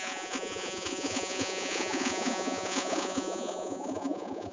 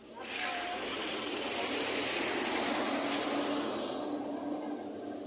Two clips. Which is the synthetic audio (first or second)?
first